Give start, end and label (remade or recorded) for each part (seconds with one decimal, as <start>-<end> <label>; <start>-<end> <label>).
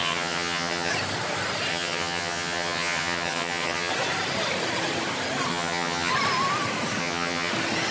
0.0-0.9 remade; 0.9-1.7 recorded; 1.7-3.9 remade; 3.9-5.5 recorded; 5.5-6.1 remade; 6.1-7.0 recorded; 7.0-7.5 remade; 7.5-7.9 recorded